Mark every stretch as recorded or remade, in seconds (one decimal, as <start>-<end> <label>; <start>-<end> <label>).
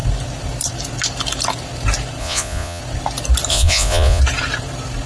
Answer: 0.0-2.2 recorded; 2.2-2.8 remade; 2.8-3.5 recorded; 3.5-4.2 remade; 4.2-5.1 recorded